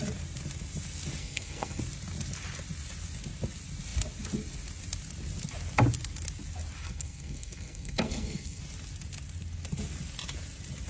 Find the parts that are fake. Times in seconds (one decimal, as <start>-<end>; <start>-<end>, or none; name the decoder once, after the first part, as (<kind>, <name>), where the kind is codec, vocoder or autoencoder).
1.2-1.8 (codec, SNAC); 6.8-8.6